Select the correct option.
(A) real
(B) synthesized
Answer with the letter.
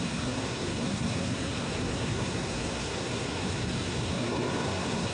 B